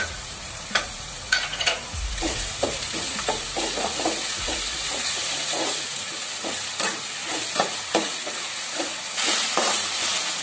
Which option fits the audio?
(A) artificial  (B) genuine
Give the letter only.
A